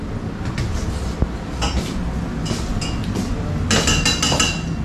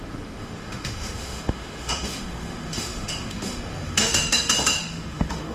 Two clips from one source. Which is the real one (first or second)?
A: first